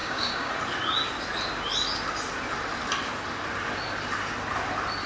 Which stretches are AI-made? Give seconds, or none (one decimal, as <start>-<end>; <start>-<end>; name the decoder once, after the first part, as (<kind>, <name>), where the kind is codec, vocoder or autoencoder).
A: 0.0-0.5 (codec, DAC)